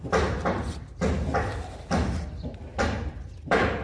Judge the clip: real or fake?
real